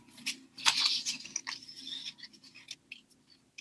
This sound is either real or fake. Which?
real